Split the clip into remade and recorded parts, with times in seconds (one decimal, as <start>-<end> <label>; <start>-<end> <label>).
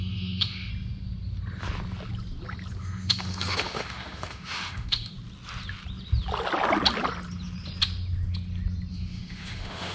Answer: 0.0-0.7 remade; 0.7-2.8 recorded; 2.8-5.1 remade; 5.1-8.9 recorded; 8.9-9.9 remade